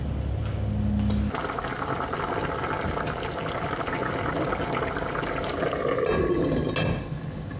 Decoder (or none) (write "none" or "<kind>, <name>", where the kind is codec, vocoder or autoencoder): none